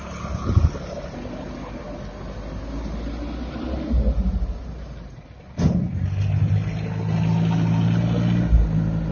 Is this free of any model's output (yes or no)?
yes